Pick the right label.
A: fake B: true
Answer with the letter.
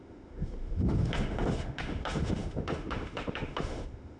A